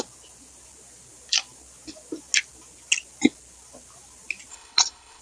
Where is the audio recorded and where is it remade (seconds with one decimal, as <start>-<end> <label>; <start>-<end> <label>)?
0.0-4.5 recorded; 4.5-5.2 remade